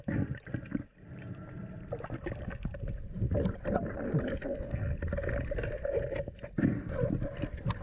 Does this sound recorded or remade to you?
recorded